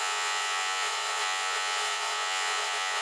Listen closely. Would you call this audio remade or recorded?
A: remade